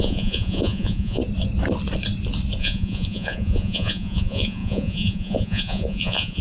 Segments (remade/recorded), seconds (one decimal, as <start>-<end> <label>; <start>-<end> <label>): 0.0-1.2 remade; 1.2-2.6 recorded; 2.6-6.4 remade